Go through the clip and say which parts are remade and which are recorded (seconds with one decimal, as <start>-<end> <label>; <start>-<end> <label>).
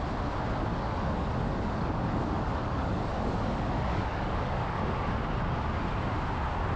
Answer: 0.0-0.7 recorded; 0.7-4.8 remade; 4.8-6.8 recorded